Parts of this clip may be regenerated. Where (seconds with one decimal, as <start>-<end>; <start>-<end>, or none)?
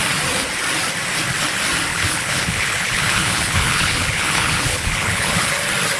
1.9-5.5